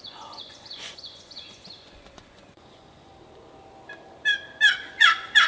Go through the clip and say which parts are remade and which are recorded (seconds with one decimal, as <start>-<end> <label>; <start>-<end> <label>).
0.0-3.1 remade; 3.1-4.7 recorded; 4.7-5.5 remade